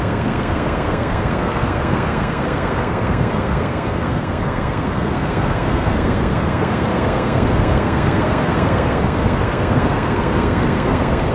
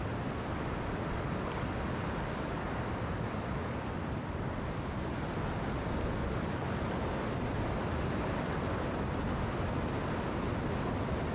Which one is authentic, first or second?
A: second